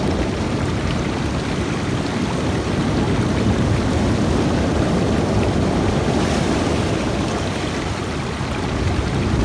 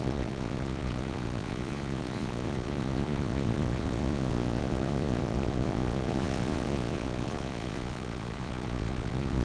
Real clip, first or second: first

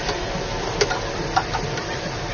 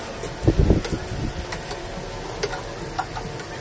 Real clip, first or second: second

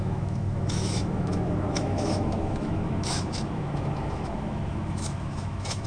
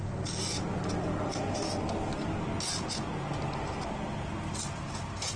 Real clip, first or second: second